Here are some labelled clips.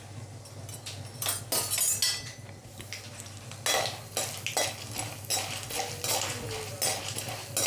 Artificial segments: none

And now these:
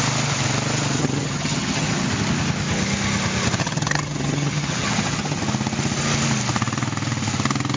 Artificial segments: 1.0-2.1 (vocoder, HiFi-GAN); 3.6-5.4

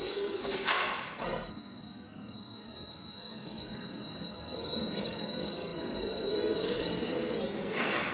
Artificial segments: 0.0-8.1 (codec, SNAC)

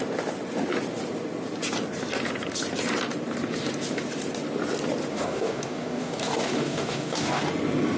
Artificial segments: 5.1-7.4 (codec, DAC)

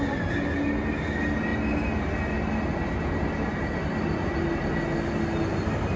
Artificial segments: none